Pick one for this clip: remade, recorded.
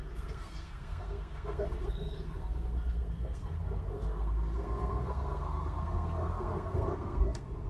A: remade